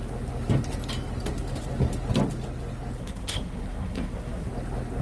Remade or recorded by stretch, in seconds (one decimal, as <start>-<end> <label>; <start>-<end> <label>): 0.0-3.0 recorded; 3.0-4.5 remade; 4.5-5.0 recorded

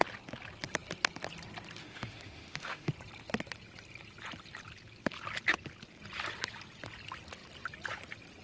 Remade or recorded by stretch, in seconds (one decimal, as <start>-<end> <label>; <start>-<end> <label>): 0.0-1.8 recorded; 1.8-2.9 remade; 2.9-8.4 recorded

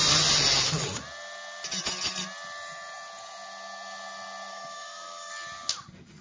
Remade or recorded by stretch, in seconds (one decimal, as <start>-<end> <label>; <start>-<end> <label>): 0.0-4.5 recorded; 4.5-5.3 remade; 5.3-6.2 recorded

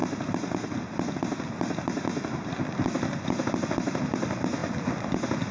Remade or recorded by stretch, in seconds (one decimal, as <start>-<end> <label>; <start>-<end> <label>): 0.0-5.5 recorded

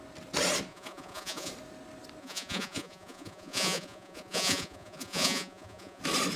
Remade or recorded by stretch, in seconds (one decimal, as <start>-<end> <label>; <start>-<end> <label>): 0.0-0.7 recorded; 0.7-1.5 remade; 1.5-2.2 recorded; 2.2-6.0 remade; 6.0-6.4 recorded

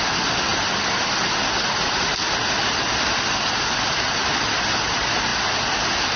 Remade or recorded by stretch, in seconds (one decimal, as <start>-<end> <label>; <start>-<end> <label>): 0.0-6.2 recorded

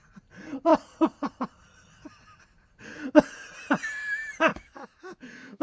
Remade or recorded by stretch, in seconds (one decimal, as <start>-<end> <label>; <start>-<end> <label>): 0.0-4.5 recorded; 4.5-5.6 remade